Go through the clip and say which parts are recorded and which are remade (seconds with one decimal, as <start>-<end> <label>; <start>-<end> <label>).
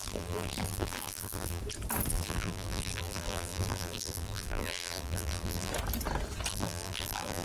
0.0-1.6 remade; 1.6-2.1 recorded; 2.1-5.7 remade; 5.7-6.5 recorded; 6.5-7.4 remade